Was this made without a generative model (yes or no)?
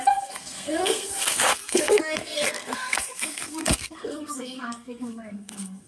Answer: no